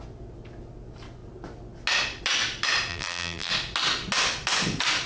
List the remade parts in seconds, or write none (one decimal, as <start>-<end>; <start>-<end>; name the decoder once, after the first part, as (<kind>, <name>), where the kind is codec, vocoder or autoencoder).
2.9-3.5 (vocoder, BigVGAN v2)